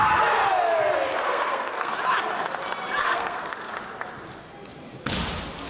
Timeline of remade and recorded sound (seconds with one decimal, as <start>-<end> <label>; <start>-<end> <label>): 0.0-1.1 recorded; 1.1-1.9 remade; 1.9-3.0 recorded; 3.0-3.7 remade; 3.7-5.7 recorded

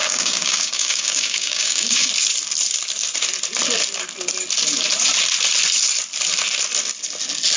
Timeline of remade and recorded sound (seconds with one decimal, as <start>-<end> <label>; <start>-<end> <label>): 0.0-2.1 remade; 2.1-7.6 recorded

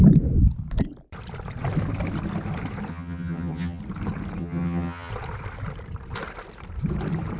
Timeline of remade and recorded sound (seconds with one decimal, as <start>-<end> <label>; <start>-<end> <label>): 0.0-2.9 recorded; 2.9-3.8 remade; 3.8-4.4 recorded; 4.4-5.1 remade; 5.1-7.4 recorded

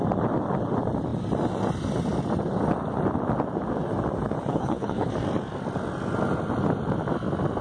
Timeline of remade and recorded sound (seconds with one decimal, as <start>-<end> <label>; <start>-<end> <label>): 0.0-4.5 recorded; 4.5-5.1 remade; 5.1-7.6 recorded

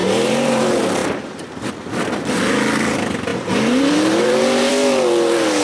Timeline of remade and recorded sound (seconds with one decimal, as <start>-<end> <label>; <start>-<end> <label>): 0.0-0.6 remade; 0.6-1.0 recorded; 1.0-1.6 remade; 1.6-3.3 recorded; 3.3-4.7 remade; 4.7-5.6 recorded

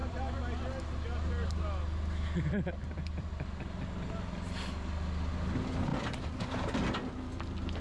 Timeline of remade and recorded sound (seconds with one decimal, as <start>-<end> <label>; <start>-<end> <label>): 0.0-0.6 remade; 0.6-2.8 recorded; 2.8-3.3 remade; 3.3-5.9 recorded; 5.9-6.5 remade; 6.5-7.8 recorded

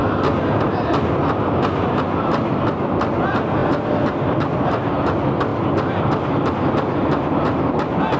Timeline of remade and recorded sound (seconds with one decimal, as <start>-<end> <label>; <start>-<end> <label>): 0.0-8.2 recorded

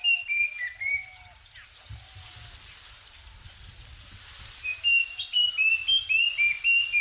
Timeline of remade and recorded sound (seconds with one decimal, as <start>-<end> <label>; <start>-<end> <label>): 0.0-7.0 recorded